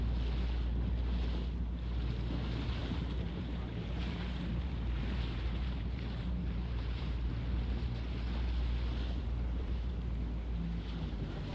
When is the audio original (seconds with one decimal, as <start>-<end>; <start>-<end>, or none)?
0.0-2.8; 7.3-9.2; 9.9-11.5